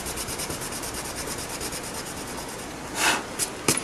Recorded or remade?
recorded